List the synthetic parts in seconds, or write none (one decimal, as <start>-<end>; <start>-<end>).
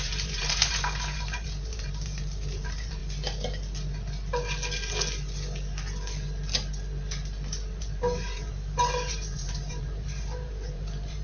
0.0-3.0; 7.8-11.2